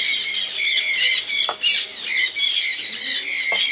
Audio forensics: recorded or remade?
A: recorded